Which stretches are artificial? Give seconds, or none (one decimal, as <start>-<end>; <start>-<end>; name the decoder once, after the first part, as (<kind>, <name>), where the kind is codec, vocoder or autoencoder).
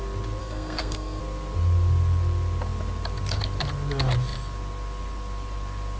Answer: 0.4-1.2 (codec, SNAC)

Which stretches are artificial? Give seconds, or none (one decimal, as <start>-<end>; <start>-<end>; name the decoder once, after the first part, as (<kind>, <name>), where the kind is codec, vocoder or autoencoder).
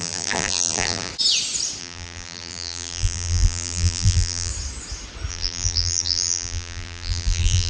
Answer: 0.0-1.1 (vocoder, BigVGAN v2); 1.8-4.5; 5.3-7.7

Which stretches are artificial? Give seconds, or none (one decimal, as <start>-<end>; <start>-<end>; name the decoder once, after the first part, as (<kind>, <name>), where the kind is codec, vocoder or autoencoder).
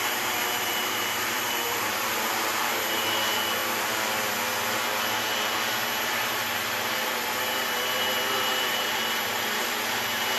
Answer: 0.0-3.6 (vocoder, BigVGAN v2); 6.0-10.4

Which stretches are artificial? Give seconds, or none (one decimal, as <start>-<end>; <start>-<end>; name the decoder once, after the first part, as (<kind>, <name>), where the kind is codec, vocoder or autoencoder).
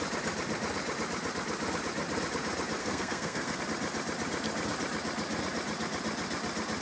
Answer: 2.8-3.6 (codec, SNAC)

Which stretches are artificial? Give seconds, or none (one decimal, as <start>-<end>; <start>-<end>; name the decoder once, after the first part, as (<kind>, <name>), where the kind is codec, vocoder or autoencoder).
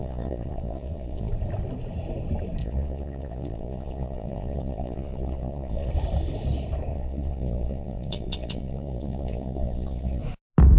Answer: 0.0-1.3 (vocoder, Vocos); 2.6-5.9; 6.9-10.2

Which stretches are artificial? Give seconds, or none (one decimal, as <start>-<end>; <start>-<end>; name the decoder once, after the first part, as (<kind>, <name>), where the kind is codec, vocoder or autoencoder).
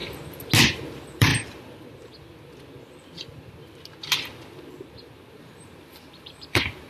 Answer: 0.7-1.3 (vocoder, BigVGAN v2); 5.4-6.9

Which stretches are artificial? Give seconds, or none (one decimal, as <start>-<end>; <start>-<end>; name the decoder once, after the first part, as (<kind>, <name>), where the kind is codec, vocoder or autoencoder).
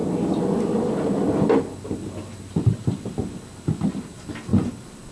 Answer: 4.5-5.1 (vocoder, BigVGAN v2)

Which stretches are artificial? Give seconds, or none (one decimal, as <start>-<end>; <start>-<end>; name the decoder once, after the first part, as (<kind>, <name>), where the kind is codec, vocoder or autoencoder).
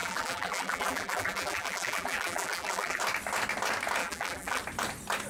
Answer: 0.0-3.0 (vocoder, BigVGAN v2); 4.0-4.6